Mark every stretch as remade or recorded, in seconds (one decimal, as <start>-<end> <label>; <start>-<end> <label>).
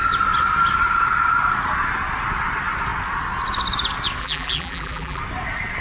0.0-4.2 recorded; 4.2-5.2 remade; 5.2-5.8 recorded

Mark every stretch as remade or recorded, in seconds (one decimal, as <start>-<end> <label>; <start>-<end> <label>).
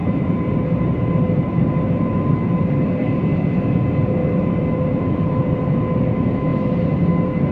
0.0-2.9 remade; 2.9-4.2 recorded; 4.2-5.4 remade; 5.4-6.5 recorded; 6.5-7.1 remade; 7.1-7.5 recorded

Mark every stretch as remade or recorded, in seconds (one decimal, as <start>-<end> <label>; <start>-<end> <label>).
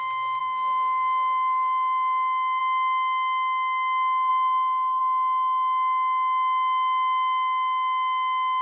0.0-0.4 recorded; 0.4-2.6 remade; 2.6-4.3 recorded; 4.3-5.0 remade; 5.0-8.6 recorded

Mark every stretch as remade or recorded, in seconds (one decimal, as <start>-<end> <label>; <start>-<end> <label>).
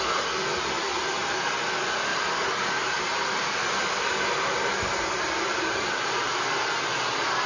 0.0-2.1 recorded; 2.1-6.5 remade; 6.5-7.5 recorded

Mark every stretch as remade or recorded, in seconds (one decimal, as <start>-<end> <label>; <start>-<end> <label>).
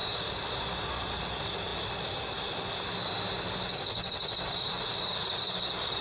0.0-0.6 remade; 0.6-4.9 recorded; 4.9-6.0 remade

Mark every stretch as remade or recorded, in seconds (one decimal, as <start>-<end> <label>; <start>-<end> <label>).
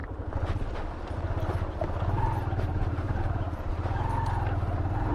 0.0-2.7 recorded; 2.7-3.3 remade; 3.3-5.1 recorded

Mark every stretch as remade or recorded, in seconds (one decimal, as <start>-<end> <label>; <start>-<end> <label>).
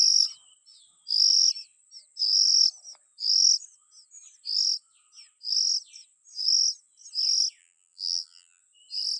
0.0-7.6 recorded; 7.6-8.6 remade; 8.6-9.2 recorded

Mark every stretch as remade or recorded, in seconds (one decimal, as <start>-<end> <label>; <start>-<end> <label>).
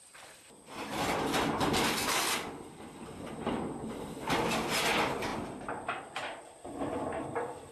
0.0-7.7 recorded